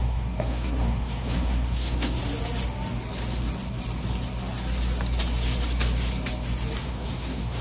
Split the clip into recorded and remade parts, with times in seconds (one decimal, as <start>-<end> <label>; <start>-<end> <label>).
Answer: 0.0-2.2 remade; 2.2-6.8 recorded; 6.8-7.6 remade